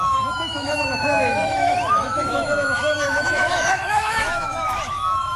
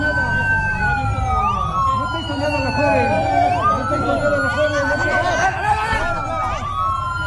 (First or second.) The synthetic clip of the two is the first